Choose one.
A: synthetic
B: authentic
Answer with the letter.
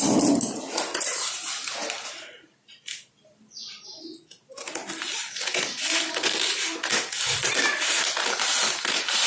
B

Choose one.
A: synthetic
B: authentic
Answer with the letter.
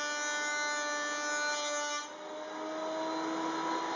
B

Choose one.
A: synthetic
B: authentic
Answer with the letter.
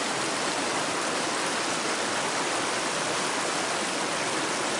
B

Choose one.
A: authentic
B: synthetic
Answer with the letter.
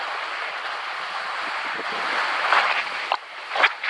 A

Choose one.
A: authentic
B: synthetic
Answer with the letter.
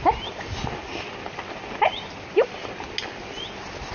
A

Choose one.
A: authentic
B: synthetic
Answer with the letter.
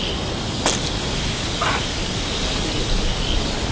A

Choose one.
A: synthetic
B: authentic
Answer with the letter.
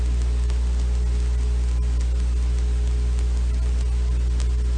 B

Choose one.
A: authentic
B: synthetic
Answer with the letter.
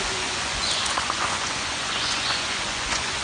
B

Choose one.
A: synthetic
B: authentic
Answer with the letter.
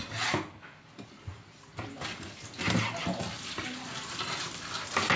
B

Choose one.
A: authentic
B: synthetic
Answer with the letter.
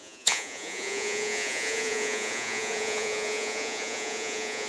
B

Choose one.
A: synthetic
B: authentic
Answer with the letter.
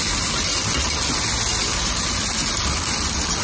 B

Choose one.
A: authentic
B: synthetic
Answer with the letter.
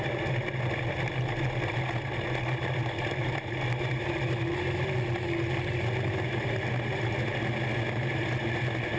A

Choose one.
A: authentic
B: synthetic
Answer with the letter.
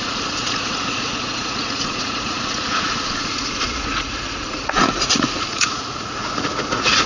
B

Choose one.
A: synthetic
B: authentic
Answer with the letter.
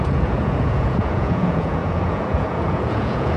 A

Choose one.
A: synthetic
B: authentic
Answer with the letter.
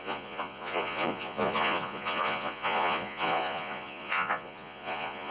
A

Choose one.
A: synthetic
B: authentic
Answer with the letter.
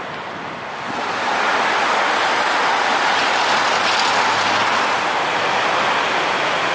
B